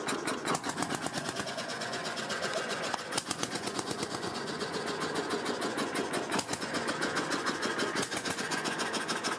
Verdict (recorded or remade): remade